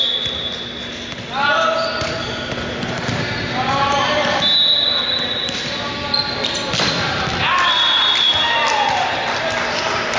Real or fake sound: real